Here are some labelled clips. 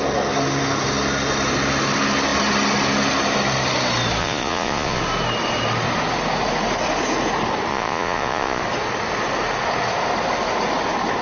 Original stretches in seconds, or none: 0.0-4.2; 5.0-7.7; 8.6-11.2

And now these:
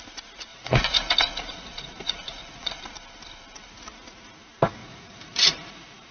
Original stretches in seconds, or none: 0.0-0.5; 2.8-4.8

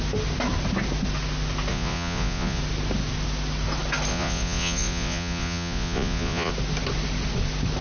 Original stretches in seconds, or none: 0.0-1.7; 2.6-4.1; 6.5-7.8

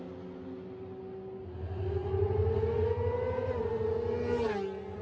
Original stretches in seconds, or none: 0.0-5.0